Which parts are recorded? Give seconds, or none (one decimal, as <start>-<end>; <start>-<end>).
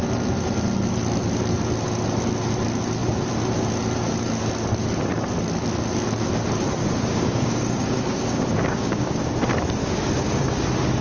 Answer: 0.0-6.8; 9.2-9.8; 10.5-11.0